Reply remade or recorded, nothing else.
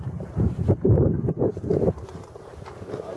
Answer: remade